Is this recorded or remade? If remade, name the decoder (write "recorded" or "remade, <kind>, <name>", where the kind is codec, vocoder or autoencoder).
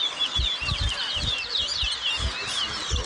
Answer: recorded